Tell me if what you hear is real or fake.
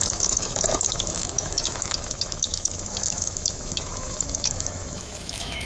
fake